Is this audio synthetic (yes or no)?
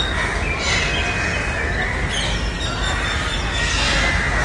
no